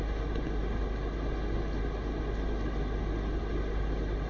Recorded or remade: recorded